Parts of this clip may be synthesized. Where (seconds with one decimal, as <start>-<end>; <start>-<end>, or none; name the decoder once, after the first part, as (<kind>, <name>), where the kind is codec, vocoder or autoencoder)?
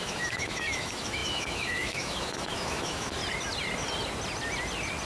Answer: 0.0-3.2 (autoencoder, DAC-VAE)